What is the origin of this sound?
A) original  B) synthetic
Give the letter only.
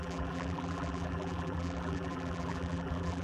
B